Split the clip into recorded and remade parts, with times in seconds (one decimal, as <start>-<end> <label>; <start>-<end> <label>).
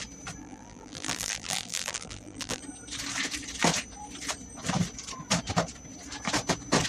0.0-0.4 recorded; 0.4-2.6 remade; 2.6-6.9 recorded